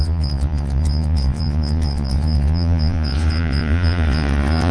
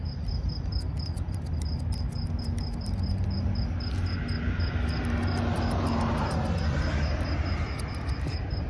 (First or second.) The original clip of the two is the second